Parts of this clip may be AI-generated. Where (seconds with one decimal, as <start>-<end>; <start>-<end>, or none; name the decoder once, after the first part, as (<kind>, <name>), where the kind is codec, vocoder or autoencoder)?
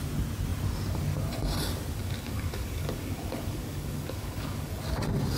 2.0-4.8 (codec, DAC)